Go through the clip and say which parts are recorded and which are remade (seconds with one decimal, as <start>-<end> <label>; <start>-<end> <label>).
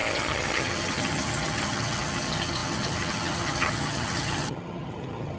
0.0-5.4 remade